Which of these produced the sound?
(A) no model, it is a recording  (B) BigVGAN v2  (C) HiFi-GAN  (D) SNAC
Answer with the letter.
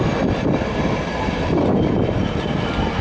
B